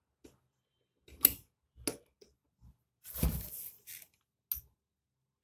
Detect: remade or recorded recorded